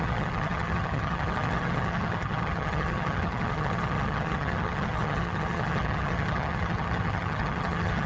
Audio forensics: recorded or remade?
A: remade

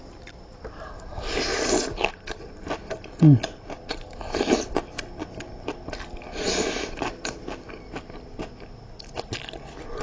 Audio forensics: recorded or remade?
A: recorded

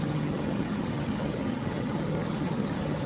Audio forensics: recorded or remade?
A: remade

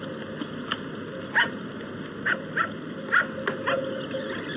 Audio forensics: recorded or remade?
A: recorded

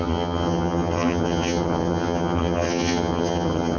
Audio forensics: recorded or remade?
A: remade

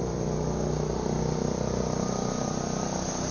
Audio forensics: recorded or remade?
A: recorded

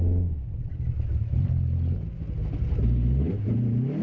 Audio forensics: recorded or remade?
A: recorded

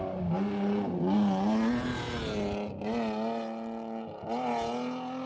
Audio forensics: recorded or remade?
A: recorded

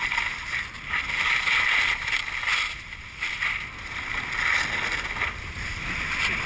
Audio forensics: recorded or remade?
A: recorded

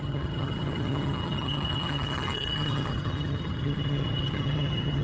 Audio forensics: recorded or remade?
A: remade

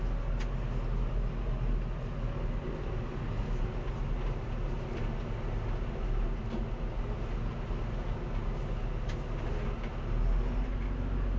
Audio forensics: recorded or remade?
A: recorded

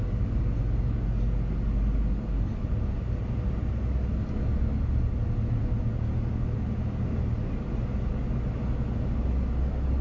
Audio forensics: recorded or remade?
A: recorded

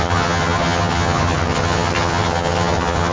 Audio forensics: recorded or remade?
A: remade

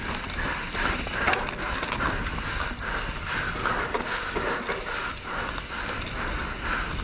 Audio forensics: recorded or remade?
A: recorded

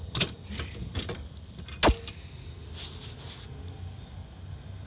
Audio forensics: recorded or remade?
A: recorded